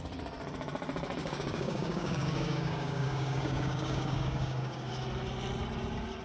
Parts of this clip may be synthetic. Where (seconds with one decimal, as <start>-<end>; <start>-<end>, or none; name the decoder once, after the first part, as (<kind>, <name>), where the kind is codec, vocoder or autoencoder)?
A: 1.2-4.9 (codec, DAC)